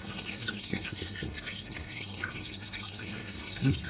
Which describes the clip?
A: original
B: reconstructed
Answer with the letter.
B